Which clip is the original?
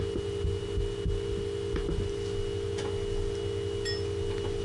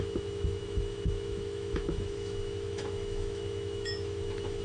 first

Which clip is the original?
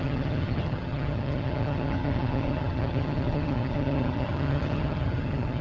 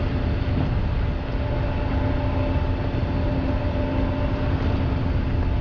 second